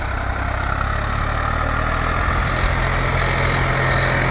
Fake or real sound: real